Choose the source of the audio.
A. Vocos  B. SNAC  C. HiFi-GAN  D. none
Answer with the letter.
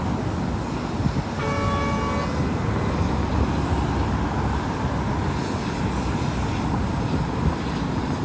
D